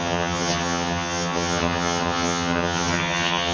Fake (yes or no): yes